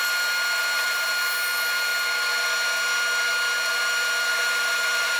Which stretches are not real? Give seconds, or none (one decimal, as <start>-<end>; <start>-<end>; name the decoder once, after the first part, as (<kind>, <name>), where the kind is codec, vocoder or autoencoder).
0.6-1.1 (vocoder, BigVGAN v2); 4.3-5.2